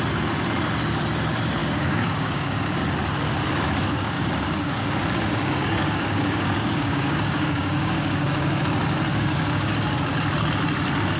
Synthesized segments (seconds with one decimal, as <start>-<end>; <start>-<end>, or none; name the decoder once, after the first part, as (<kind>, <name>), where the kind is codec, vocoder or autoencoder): 1.6-2.8 (codec, DAC); 3.8-8.6; 9.1-9.7